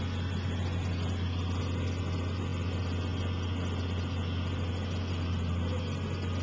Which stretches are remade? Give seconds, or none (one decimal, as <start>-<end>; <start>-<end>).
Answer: none